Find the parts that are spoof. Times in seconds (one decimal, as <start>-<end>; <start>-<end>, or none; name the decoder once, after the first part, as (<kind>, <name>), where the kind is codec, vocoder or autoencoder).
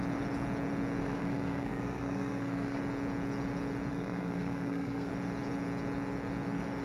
1.0-2.8 (codec, SNAC); 3.9-5.1